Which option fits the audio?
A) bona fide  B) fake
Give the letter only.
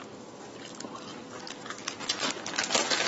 A